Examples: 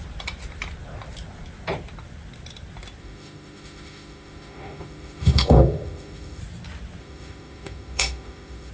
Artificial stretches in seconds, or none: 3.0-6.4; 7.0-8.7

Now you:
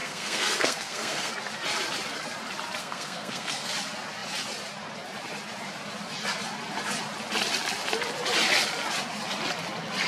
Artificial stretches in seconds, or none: 0.0-1.3; 2.8-3.7

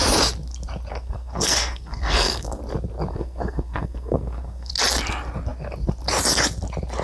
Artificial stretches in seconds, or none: 0.9-2.6; 3.1-4.7

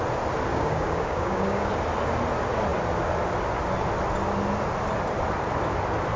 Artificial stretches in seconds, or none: 0.5-1.7

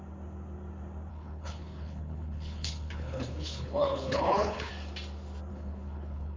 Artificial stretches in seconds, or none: 1.1-4.7; 5.5-6.4

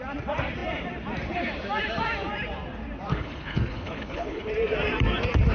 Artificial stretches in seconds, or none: 3.1-4.5